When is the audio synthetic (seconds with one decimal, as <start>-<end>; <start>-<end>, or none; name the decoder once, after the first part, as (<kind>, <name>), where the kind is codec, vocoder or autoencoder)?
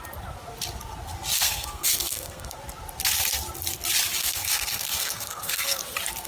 1.4-2.6 (codec, SNAC); 4.2-5.8